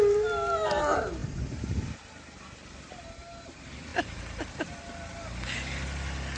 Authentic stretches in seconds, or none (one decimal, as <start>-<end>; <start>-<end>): 0.0-6.4